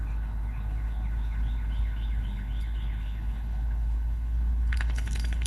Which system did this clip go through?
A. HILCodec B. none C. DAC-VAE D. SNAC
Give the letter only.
A